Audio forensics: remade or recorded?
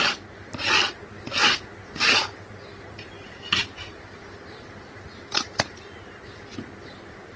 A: recorded